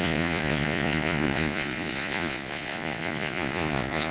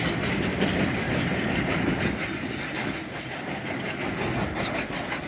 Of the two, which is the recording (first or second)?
second